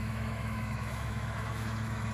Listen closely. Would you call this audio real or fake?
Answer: fake